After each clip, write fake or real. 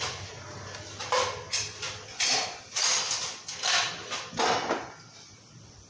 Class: real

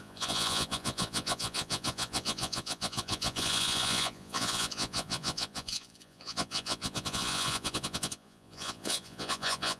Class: fake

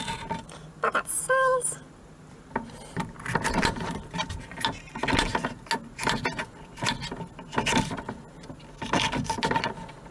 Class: real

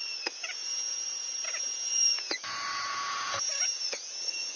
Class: fake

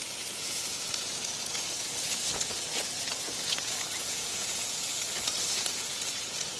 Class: fake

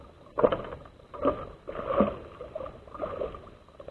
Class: real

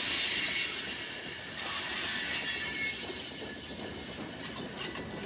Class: real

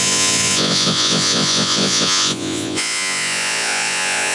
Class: fake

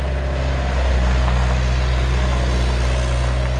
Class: real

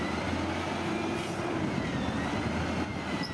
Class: real